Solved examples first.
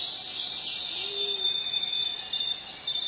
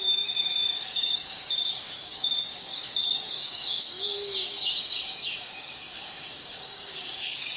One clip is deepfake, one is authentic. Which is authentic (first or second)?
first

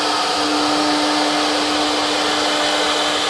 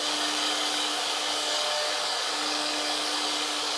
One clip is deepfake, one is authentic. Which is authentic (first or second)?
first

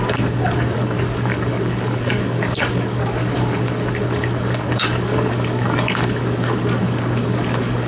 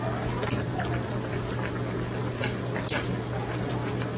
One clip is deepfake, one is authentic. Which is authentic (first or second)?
second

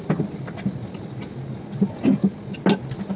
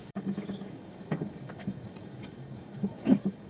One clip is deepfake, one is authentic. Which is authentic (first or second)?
first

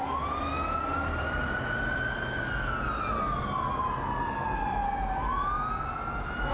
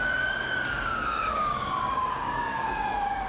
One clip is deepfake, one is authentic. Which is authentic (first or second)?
first